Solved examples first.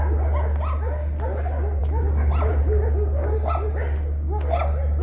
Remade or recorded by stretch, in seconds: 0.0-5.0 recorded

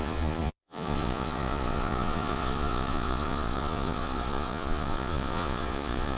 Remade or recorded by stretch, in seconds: 0.0-6.2 remade

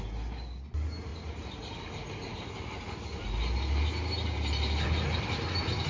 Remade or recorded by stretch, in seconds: 0.0-5.9 recorded

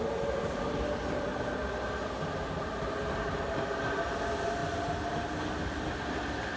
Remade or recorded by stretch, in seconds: 0.0-6.6 recorded

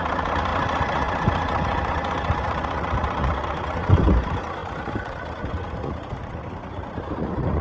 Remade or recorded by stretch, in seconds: 0.0-7.6 remade

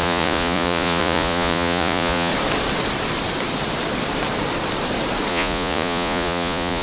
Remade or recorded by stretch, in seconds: 0.0-2.3 remade; 2.3-5.3 recorded; 5.3-6.8 remade

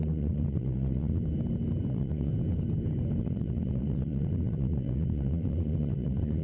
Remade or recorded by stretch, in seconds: 0.0-1.2 remade; 1.2-1.9 recorded; 1.9-2.3 remade; 2.3-3.2 recorded; 3.2-6.4 remade

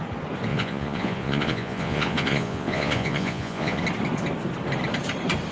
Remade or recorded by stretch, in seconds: 0.0-0.5 recorded; 0.5-3.8 remade; 3.8-5.5 recorded